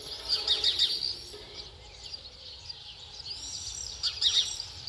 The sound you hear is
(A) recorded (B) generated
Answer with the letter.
A